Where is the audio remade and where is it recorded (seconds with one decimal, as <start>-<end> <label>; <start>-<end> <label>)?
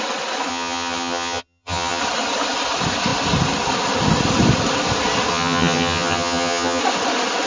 0.0-0.5 recorded; 0.5-2.0 remade; 2.0-5.3 recorded; 5.3-6.8 remade; 6.8-7.5 recorded